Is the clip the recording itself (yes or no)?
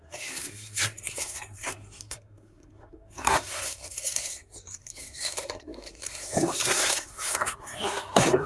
no